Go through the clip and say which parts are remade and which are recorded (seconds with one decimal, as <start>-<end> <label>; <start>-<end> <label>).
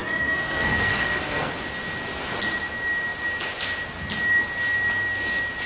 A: 0.0-1.5 remade; 1.5-5.7 recorded